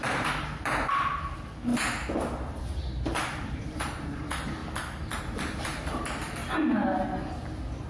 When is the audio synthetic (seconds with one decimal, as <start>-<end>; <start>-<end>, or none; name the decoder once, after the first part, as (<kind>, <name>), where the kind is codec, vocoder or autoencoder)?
0.0-1.7 (vocoder, BigVGAN v2); 2.2-4.6; 5.2-6.4